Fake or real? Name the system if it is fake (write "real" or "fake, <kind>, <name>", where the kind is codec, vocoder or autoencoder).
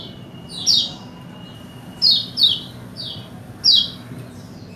fake, vocoder, BigVGAN v2